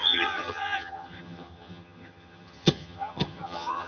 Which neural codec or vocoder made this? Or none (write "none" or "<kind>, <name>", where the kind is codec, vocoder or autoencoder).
vocoder, HiFi-GAN